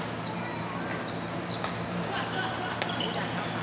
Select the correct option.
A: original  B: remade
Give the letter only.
A